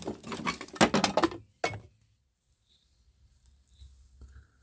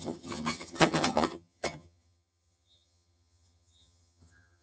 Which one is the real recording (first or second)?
first